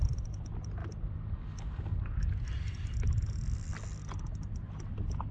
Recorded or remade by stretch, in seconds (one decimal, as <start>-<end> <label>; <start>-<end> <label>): 0.0-5.3 recorded